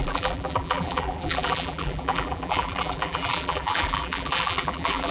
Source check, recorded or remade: remade